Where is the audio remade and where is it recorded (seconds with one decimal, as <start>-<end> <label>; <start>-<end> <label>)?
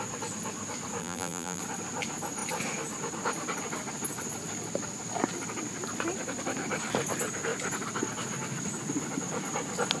0.0-1.0 recorded; 1.0-1.6 remade; 1.6-10.0 recorded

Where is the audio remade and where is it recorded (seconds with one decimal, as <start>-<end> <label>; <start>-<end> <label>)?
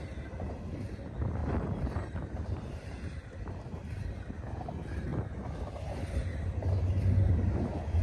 0.0-1.4 recorded; 1.4-3.5 remade; 3.5-8.0 recorded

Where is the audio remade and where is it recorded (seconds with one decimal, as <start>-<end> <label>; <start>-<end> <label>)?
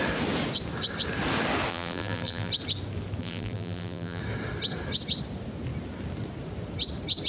0.0-1.7 recorded; 1.7-2.5 remade; 2.5-3.2 recorded; 3.2-4.2 remade; 4.2-7.3 recorded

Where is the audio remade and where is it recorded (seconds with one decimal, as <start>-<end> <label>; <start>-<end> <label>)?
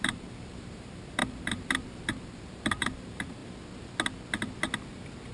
0.0-3.4 remade; 3.4-5.3 recorded